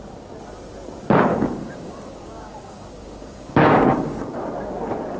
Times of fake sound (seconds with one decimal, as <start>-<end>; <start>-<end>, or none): 1.3-4.4